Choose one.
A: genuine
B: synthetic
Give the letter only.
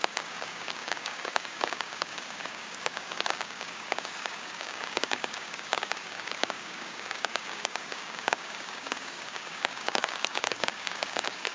B